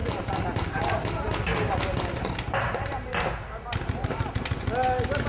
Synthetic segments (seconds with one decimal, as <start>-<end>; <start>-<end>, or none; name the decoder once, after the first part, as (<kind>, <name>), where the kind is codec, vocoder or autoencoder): none

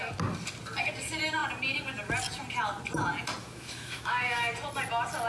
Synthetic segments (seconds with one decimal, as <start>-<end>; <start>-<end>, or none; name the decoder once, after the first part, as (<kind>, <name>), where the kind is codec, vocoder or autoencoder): 3.4-4.5 (autoencoder, DAC-VAE)

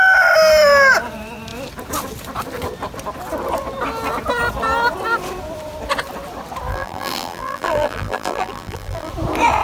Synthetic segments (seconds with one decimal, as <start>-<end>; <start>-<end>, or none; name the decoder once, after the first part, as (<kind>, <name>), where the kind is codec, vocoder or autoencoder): 6.7-9.1 (vocoder, BigVGAN v2)